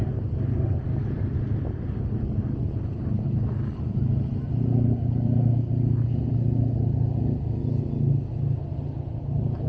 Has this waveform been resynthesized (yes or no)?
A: no